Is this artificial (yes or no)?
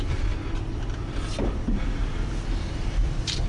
yes